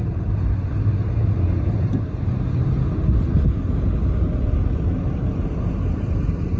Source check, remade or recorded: recorded